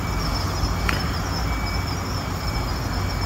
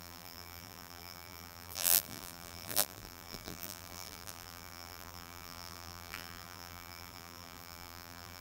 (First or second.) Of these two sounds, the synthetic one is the second